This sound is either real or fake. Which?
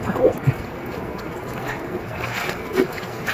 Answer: fake